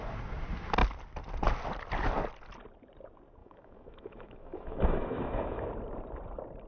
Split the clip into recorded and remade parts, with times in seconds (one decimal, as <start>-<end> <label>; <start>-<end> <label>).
0.0-3.4 recorded; 3.4-5.7 remade; 5.7-6.7 recorded